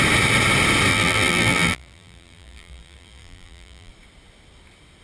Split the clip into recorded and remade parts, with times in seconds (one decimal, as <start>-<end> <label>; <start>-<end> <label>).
0.0-0.9 recorded; 0.9-3.9 remade; 3.9-5.0 recorded